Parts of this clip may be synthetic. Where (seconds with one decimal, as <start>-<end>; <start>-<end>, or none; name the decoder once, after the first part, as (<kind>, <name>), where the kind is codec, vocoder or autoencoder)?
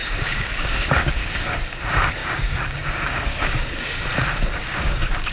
0.0-1.8 (codec, DAC); 2.2-4.0; 4.6-5.3